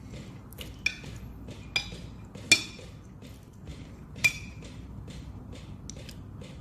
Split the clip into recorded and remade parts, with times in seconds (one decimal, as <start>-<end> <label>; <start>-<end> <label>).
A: 0.0-3.7 recorded; 3.7-5.6 remade; 5.6-6.6 recorded

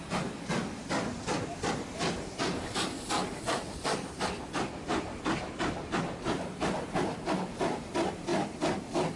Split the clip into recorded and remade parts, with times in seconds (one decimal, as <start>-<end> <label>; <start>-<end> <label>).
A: 0.0-9.2 remade

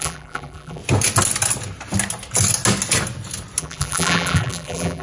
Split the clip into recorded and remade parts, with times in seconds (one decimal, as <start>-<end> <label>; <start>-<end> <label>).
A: 0.0-0.8 remade; 0.8-3.6 recorded; 3.6-5.0 remade

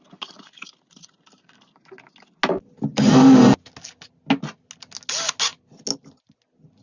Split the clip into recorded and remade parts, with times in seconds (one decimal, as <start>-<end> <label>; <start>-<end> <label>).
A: 0.0-2.9 recorded; 2.9-3.7 remade; 3.7-6.8 recorded

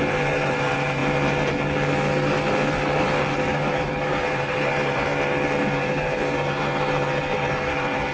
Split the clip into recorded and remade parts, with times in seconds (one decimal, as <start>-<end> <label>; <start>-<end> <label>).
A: 0.0-1.0 remade; 1.0-3.0 recorded; 3.0-5.1 remade; 5.1-5.6 recorded; 5.6-8.1 remade

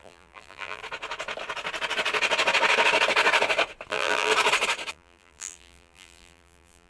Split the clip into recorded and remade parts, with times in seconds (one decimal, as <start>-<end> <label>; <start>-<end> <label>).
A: 0.0-0.8 remade; 0.8-3.9 recorded; 3.9-4.3 remade; 4.3-4.9 recorded; 4.9-6.9 remade

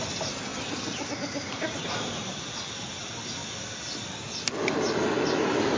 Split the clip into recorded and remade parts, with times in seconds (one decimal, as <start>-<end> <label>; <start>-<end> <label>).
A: 0.0-0.5 recorded; 0.5-2.4 remade; 2.4-5.8 recorded

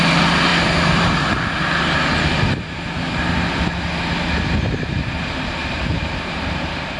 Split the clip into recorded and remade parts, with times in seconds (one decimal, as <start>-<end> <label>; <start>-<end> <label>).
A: 0.0-5.6 recorded; 5.6-7.0 remade